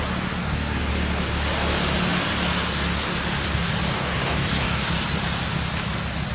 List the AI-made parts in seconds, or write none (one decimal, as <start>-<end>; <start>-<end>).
0.4-0.9; 3.9-4.9